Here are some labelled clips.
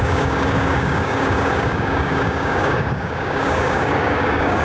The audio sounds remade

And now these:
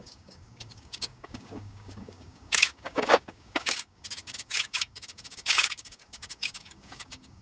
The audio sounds remade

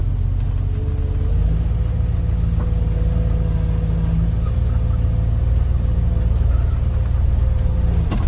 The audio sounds recorded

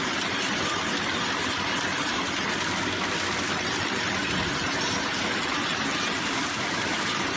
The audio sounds recorded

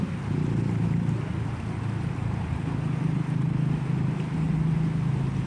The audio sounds recorded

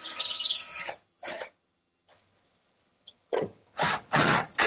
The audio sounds remade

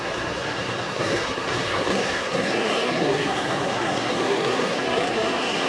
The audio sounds remade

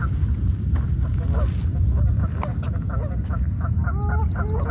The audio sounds recorded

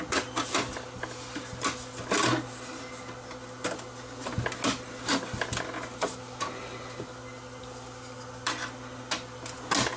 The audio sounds recorded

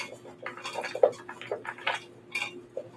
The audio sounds recorded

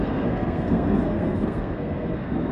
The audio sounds remade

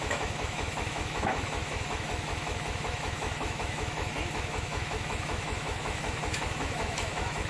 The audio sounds remade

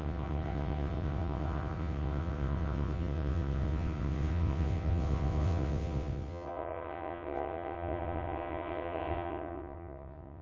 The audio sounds remade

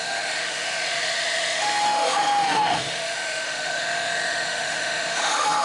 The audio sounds remade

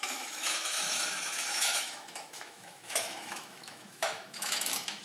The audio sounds remade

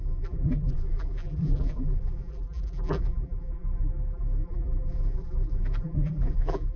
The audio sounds remade